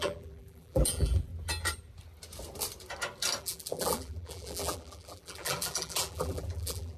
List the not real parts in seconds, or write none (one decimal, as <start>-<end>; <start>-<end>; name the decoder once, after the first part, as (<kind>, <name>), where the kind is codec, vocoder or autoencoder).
0.0-1.3 (vocoder, BigVGAN v2); 3.4-7.0